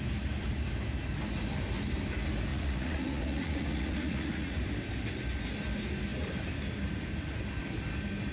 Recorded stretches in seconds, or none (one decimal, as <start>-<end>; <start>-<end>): 0.0-2.5; 4.6-8.3

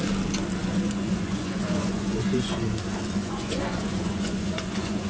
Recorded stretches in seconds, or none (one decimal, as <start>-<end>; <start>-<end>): 0.0-0.6; 2.7-3.2

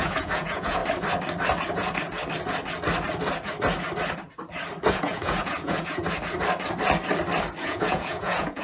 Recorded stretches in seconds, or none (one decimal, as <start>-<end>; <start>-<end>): 0.8-4.9; 6.0-7.6

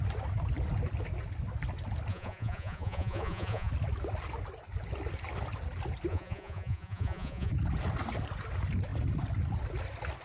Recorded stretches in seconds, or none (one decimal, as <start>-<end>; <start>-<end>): 0.0-2.1; 3.7-6.1; 7.5-10.2

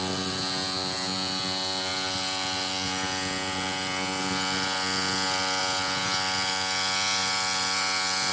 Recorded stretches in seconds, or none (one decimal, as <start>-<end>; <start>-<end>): none

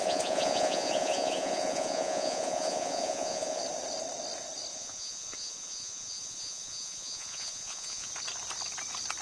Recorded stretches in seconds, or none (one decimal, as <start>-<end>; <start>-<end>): 3.6-4.7; 8.1-9.2

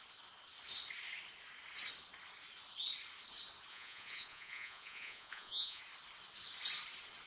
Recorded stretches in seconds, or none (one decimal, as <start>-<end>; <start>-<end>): 0.0-3.7; 5.8-7.3

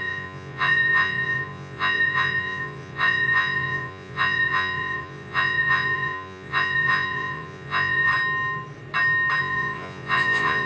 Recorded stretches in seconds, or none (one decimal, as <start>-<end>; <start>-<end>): 8.1-9.4